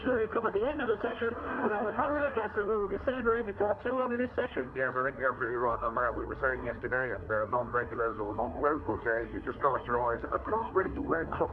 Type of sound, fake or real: fake